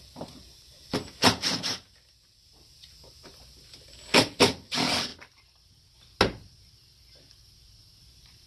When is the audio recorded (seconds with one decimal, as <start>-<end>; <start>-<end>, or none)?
5.1-8.0